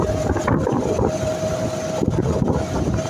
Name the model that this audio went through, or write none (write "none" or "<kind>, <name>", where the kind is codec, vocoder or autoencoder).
none